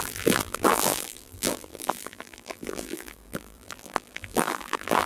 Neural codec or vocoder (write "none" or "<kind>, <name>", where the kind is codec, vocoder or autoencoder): vocoder, BigVGAN v2